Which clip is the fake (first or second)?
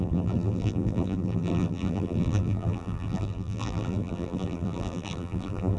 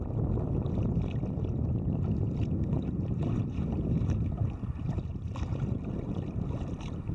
first